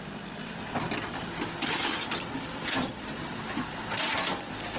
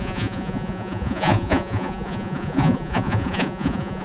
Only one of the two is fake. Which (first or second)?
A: second